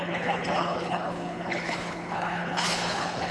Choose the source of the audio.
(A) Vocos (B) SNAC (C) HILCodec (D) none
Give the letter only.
C